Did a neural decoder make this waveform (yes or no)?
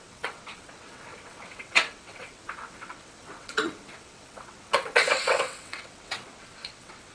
yes